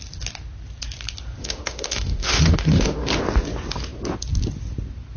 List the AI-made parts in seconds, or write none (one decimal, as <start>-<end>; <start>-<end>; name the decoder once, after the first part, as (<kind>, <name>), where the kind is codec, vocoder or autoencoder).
1.4-3.1 (autoencoder, DAC-VAE)